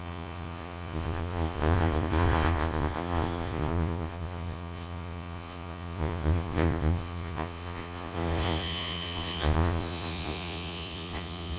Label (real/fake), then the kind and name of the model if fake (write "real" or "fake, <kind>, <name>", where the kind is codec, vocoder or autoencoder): fake, vocoder, Vocos